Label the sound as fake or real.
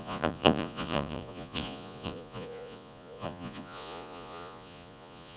fake